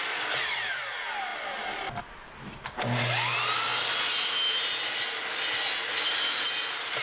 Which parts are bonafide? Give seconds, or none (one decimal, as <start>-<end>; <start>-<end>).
0.0-7.0